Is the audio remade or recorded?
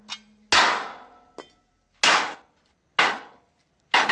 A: recorded